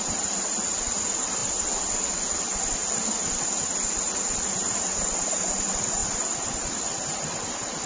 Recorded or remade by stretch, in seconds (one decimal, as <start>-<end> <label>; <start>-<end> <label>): 0.0-1.4 remade; 1.4-2.4 recorded; 2.4-7.9 remade